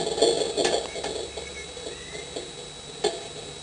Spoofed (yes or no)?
no